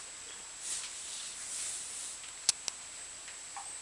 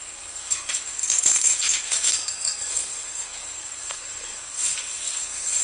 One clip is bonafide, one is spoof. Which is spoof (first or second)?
second